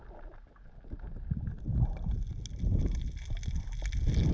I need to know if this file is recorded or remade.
recorded